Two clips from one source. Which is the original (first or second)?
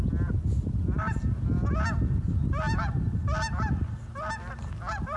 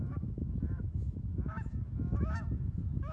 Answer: first